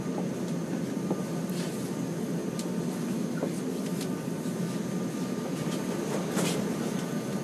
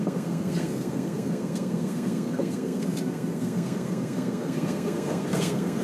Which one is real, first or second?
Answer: first